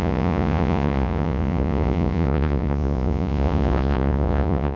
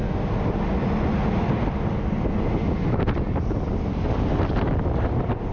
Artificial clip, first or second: first